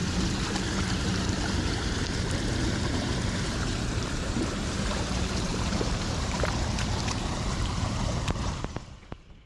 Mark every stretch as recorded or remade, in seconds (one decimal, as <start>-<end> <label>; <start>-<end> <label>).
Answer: 0.0-9.5 remade